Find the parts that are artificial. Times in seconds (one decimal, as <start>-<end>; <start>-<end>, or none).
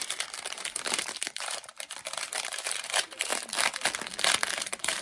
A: 0.0-1.7; 2.5-3.3; 4.6-5.0